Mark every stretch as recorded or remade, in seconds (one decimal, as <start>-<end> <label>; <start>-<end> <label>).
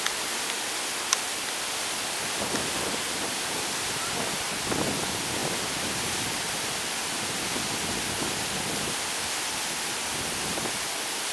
0.0-11.3 recorded